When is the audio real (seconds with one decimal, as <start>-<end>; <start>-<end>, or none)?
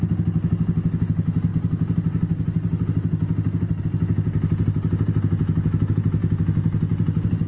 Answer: 0.0-7.5